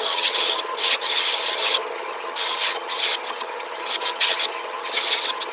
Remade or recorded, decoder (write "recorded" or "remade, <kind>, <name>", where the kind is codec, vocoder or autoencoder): remade, vocoder, HiFi-GAN